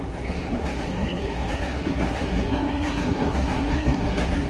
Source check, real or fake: fake